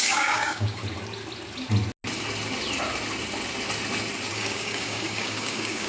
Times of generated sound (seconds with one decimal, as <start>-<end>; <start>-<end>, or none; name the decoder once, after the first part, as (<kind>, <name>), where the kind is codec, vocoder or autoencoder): 0.0-0.8 (codec, DAC); 4.3-5.9